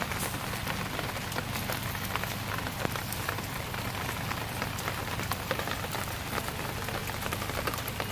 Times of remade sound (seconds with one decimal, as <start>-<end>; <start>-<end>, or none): 0.0-0.6; 3.0-7.0